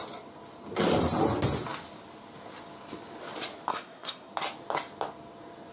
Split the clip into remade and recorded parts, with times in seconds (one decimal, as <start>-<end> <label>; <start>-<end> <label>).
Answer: 0.0-3.7 recorded; 3.7-4.3 remade; 4.3-5.7 recorded

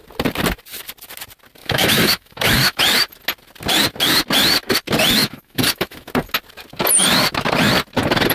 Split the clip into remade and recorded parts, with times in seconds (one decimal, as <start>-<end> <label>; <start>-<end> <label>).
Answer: 0.0-1.6 recorded; 1.6-2.8 remade; 2.8-5.2 recorded; 5.2-6.1 remade; 6.1-8.3 recorded

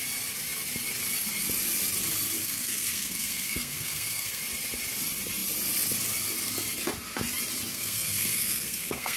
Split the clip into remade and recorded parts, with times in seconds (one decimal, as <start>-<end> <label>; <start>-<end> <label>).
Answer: 0.0-2.4 recorded; 2.4-4.4 remade; 4.4-7.7 recorded; 7.7-9.2 remade